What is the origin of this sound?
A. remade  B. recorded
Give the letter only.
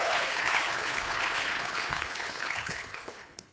A